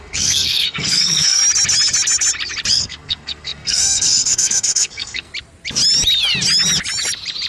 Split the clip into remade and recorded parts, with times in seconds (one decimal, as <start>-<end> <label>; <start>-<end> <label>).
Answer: 0.0-1.4 remade; 1.4-2.7 recorded; 2.7-5.3 remade; 5.3-7.5 recorded